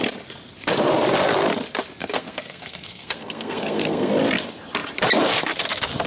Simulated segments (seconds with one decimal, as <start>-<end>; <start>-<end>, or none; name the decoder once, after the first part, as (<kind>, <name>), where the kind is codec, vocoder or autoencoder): 2.0-4.1 (codec, SNAC)